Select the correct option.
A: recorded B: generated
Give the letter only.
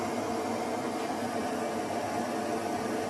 A